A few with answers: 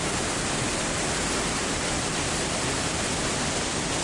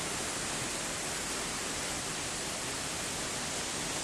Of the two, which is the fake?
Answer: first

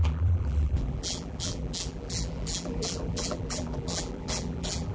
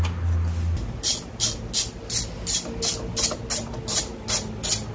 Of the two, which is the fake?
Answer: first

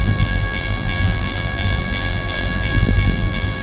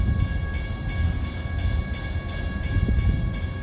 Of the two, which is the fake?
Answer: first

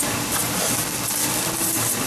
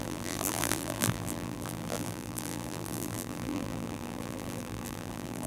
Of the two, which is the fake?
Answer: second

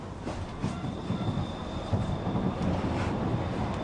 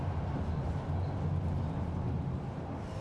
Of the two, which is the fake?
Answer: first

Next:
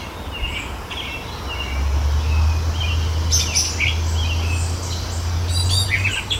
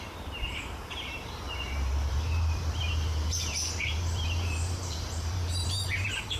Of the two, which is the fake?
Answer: second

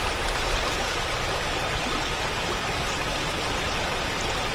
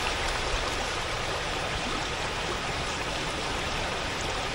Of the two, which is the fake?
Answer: second